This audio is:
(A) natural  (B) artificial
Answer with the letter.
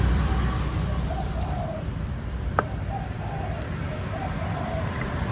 B